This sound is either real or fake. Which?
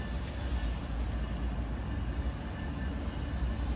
real